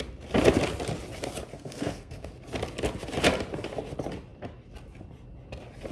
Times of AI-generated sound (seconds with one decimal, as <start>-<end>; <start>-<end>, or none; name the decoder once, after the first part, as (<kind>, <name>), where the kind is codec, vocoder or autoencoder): 1.5-2.3 (codec, SNAC)